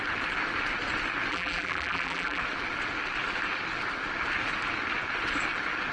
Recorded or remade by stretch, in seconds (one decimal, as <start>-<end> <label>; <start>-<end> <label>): 0.0-1.3 recorded; 1.3-2.4 remade; 2.4-5.9 recorded